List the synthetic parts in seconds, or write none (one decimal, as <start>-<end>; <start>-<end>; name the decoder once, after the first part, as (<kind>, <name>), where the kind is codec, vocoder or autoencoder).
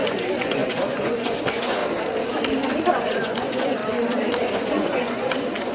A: 0.0-1.8 (vocoder, Vocos); 2.9-3.8; 4.4-5.7